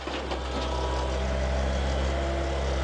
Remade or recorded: recorded